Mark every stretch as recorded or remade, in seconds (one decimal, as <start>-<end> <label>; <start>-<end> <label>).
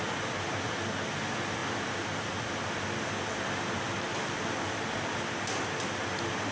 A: 0.0-6.5 recorded